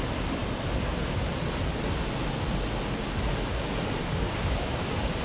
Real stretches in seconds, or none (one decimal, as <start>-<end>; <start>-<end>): 0.0-4.0